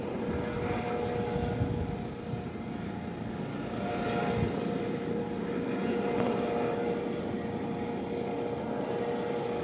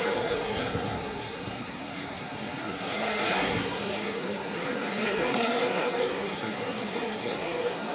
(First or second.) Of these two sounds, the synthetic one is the second